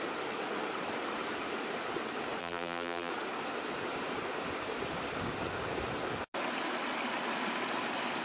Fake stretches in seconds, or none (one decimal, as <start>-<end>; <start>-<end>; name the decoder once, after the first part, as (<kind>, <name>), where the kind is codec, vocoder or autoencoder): 2.4-3.1 (vocoder, BigVGAN v2)